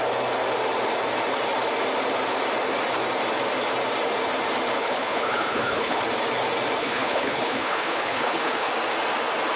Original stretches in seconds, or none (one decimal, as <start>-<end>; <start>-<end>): 0.0-4.8; 6.0-6.8; 8.7-9.6